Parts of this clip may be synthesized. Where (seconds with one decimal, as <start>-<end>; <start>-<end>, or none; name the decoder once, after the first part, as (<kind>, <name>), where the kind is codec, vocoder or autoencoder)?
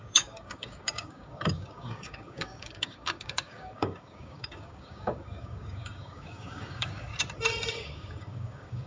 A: 0.0-7.1 (codec, DAC); 7.7-8.9